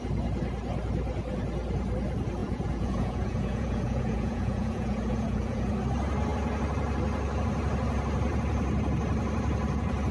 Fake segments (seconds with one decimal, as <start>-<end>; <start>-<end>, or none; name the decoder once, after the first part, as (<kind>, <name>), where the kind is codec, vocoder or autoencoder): 2.4-5.7 (vocoder, Vocos)